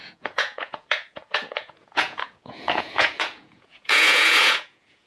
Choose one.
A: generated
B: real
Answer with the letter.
A